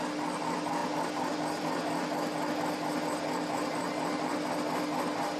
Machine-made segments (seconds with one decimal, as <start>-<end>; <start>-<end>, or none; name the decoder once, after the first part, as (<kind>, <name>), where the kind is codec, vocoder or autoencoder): none

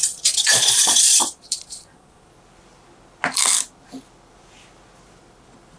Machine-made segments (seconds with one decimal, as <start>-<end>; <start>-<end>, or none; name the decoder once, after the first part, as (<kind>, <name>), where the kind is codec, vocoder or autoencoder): 0.0-2.3 (vocoder, Vocos)

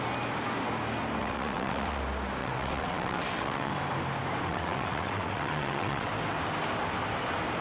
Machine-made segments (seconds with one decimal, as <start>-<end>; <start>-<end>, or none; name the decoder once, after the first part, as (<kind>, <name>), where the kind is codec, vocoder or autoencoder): 1.2-2.0 (vocoder, WaveNeXt); 2.4-3.7; 4.5-6.1

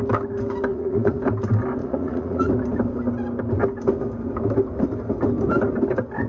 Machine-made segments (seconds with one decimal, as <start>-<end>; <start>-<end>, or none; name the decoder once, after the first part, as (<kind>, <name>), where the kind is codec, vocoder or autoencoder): 0.7-1.2 (vocoder, Vocos); 1.8-2.5

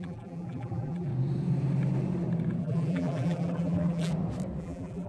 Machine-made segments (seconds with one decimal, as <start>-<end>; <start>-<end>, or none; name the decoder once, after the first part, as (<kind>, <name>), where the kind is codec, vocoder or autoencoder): 0.0-1.1 (vocoder, BigVGAN v2); 2.6-4.1; 4.6-5.1

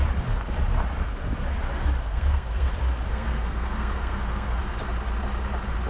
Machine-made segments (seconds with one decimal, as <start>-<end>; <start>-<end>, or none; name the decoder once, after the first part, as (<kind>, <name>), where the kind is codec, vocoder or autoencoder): 2.0-2.7 (codec, SNAC); 3.1-4.6